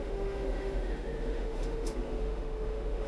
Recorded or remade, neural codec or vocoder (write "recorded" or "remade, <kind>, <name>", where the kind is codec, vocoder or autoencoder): remade, autoencoder, DAC-VAE